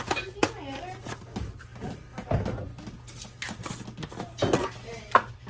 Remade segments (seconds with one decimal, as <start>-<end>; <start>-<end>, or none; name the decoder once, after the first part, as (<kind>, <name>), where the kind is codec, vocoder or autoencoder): none